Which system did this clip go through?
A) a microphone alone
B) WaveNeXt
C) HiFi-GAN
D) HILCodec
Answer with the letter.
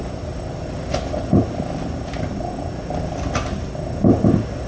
A